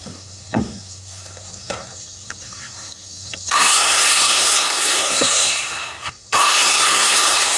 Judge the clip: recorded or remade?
remade